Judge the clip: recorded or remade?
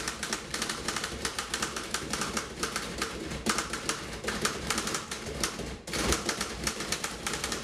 remade